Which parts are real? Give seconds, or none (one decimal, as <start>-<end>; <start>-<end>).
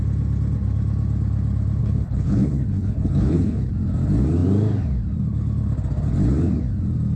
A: 0.0-1.8; 3.7-7.2